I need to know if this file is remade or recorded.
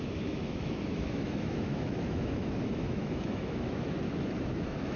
remade